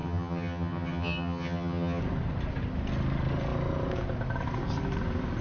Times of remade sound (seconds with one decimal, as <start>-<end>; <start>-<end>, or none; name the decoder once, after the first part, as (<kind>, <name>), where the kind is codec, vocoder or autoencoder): 0.0-2.0 (vocoder, HiFi-GAN)